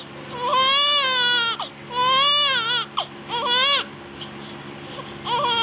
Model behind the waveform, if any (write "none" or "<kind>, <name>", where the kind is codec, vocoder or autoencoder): none